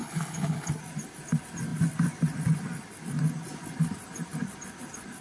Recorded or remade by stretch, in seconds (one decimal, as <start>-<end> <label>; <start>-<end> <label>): 0.0-0.7 remade; 0.7-5.2 recorded

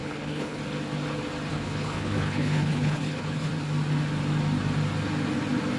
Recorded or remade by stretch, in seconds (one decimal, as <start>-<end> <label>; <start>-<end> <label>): 0.0-0.6 remade; 0.6-1.5 recorded; 1.5-3.5 remade; 3.5-5.8 recorded

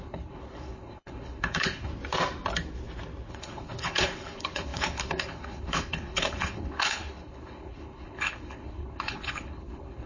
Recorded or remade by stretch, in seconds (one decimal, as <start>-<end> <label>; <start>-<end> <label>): 0.0-1.9 remade; 1.9-3.3 recorded; 3.3-10.1 remade

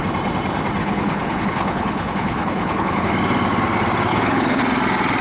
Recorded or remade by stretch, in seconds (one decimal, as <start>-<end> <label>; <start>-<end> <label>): 0.0-0.8 recorded; 0.8-3.1 remade; 3.1-4.1 recorded; 4.1-4.6 remade; 4.6-5.2 recorded

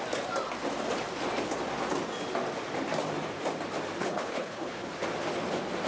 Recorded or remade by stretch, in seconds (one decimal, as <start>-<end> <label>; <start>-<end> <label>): 0.0-4.0 recorded; 4.0-4.9 remade; 4.9-5.9 recorded